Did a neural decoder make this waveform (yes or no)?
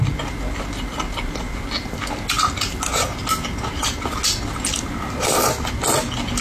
no